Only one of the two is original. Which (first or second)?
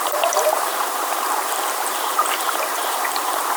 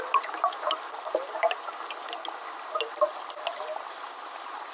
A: second